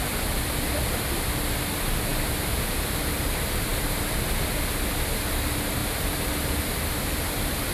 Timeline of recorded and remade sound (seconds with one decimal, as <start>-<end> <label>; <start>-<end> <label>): 0.0-2.1 recorded; 2.1-3.3 remade; 3.3-5.8 recorded; 5.8-6.6 remade; 6.6-7.7 recorded